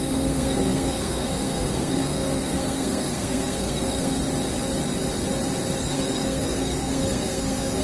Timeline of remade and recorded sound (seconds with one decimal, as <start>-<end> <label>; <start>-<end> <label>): 0.0-4.2 remade; 4.2-5.8 recorded; 5.8-7.8 remade